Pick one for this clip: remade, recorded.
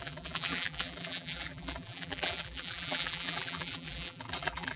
remade